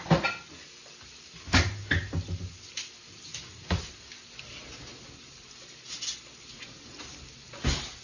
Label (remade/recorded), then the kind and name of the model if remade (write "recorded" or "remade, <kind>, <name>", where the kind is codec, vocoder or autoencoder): recorded